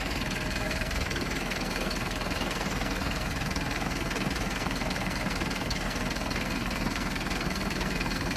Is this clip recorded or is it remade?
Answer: remade